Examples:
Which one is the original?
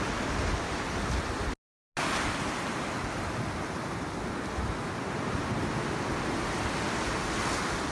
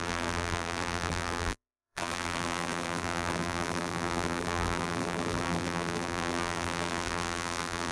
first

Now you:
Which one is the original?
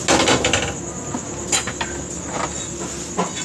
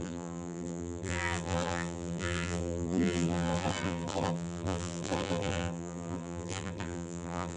first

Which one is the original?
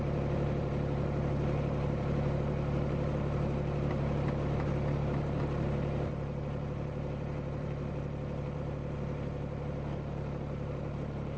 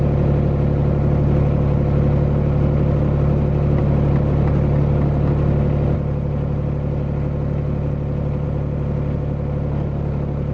second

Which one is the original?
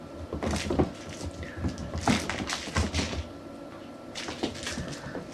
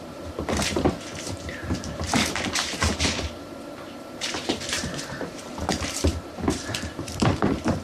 first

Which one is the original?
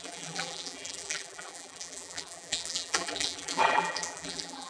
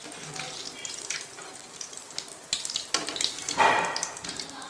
second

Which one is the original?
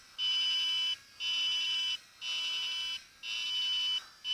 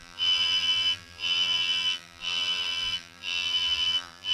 first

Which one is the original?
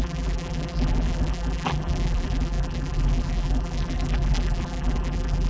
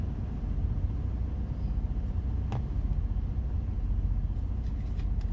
second